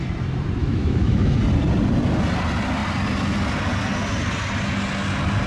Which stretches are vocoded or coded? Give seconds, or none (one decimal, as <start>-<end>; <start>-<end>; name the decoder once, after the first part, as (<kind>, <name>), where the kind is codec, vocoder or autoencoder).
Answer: 0.6-1.4 (autoencoder, DAC-VAE)